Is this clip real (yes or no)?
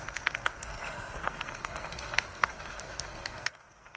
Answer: no